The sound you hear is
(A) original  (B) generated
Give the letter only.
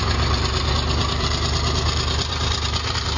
B